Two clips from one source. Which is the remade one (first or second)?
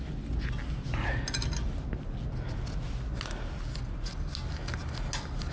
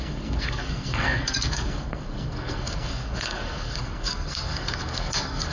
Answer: second